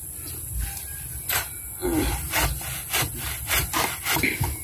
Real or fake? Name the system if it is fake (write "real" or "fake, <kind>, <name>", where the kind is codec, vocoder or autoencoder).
real